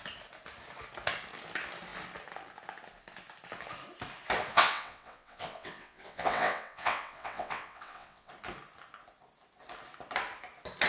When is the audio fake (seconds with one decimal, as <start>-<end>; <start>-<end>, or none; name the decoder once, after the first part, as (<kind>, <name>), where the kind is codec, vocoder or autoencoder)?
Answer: 4.5-8.3 (vocoder, WaveNeXt)